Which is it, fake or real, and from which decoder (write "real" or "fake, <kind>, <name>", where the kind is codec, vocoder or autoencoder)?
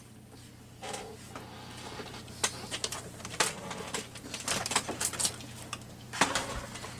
real